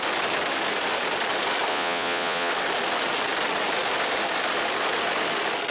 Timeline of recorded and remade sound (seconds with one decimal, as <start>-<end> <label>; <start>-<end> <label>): 0.0-1.7 recorded; 1.7-2.5 remade; 2.5-5.7 recorded